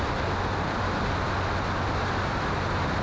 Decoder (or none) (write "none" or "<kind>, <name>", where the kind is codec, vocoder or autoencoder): none